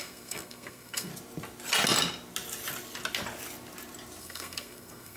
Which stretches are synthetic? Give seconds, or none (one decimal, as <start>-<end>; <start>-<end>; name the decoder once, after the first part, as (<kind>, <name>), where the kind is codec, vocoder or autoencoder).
0.0-1.1 (codec, SNAC); 4.2-5.2